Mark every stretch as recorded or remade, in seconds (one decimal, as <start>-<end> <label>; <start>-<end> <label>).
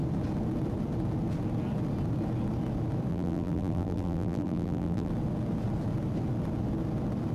0.0-3.1 recorded; 3.1-5.1 remade; 5.1-7.3 recorded